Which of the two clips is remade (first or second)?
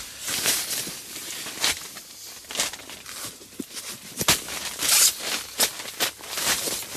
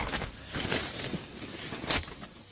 second